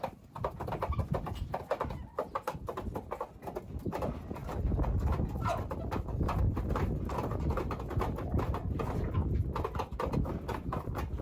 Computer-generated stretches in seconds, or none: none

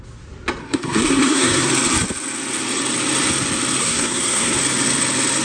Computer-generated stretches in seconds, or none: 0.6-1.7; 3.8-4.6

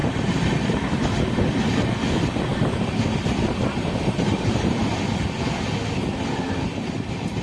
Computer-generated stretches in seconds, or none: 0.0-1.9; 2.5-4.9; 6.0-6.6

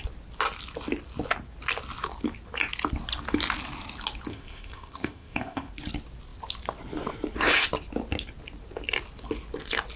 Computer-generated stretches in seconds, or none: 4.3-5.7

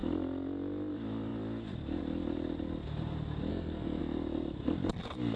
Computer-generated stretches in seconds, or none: 3.5-4.0

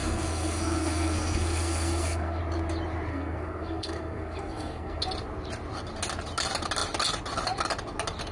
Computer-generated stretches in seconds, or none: 0.0-2.4; 3.1-5.0

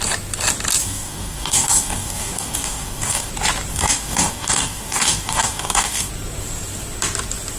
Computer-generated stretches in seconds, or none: 0.8-3.3; 3.7-6.1

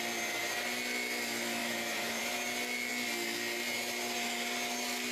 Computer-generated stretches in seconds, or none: 1.6-2.2